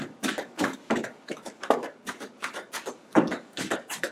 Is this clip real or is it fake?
fake